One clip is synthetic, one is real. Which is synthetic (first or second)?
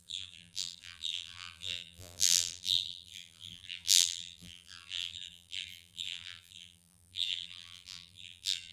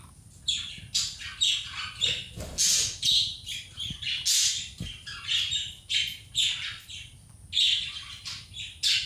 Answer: first